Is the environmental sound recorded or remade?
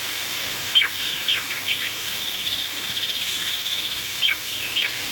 remade